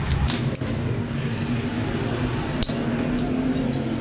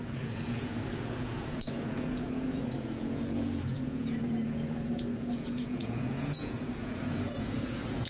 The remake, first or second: second